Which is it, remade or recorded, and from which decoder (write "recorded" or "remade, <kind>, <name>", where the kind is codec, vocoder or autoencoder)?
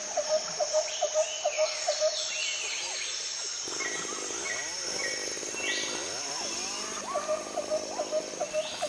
recorded